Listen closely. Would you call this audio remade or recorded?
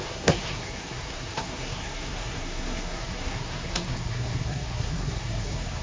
remade